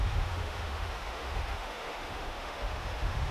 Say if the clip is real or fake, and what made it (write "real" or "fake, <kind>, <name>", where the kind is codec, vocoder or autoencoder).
fake, autoencoder, DAC-VAE